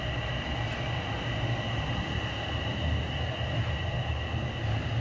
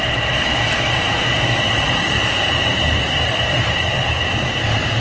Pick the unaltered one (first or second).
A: first